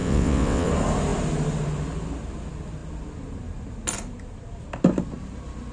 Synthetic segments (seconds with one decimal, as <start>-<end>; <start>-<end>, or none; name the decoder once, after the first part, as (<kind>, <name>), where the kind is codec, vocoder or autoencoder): 0.0-0.7 (vocoder, WaveNeXt)